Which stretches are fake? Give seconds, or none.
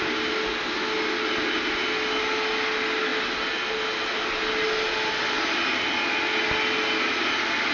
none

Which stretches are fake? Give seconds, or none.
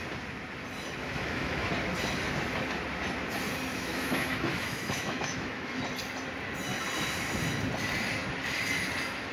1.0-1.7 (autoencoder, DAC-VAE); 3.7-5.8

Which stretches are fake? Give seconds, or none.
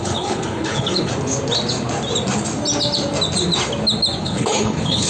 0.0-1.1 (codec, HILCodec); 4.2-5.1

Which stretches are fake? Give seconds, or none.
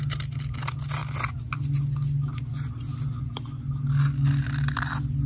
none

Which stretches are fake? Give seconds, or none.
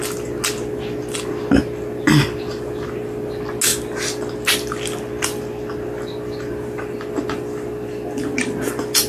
none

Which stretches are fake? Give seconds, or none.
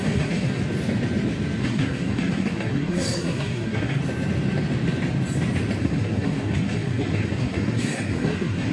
0.0-0.6 (codec, SNAC); 1.6-4.0; 5.8-8.7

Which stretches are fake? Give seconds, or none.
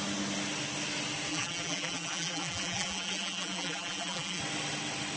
1.3-4.4 (vocoder, BigVGAN v2)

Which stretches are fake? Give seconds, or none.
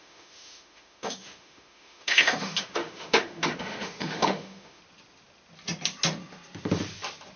0.0-4.8 (autoencoder, DAC-VAE)